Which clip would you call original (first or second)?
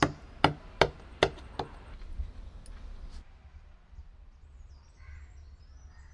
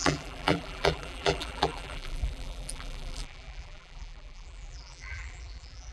first